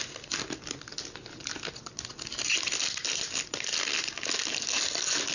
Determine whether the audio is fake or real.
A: real